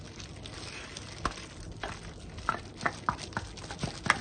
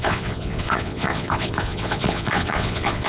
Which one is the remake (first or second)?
second